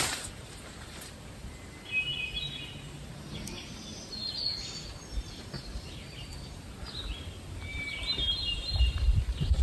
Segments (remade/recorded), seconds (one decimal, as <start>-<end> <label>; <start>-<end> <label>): 0.0-7.7 recorded; 7.7-8.9 remade; 8.9-9.6 recorded